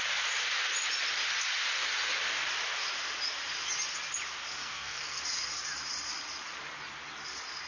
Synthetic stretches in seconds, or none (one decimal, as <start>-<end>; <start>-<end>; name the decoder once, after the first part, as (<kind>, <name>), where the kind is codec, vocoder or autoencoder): 4.6-5.2 (codec, SNAC)